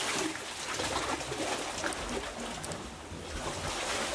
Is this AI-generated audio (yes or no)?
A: no